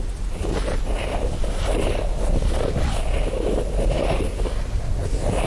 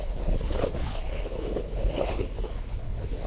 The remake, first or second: second